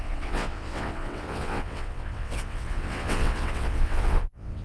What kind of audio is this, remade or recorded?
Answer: remade